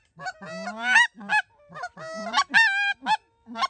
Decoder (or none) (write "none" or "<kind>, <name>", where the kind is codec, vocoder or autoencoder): none